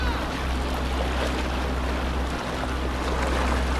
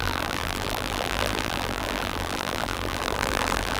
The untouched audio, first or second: first